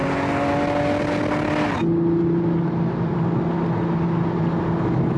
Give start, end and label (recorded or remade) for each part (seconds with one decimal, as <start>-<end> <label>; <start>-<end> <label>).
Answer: 0.0-5.2 recorded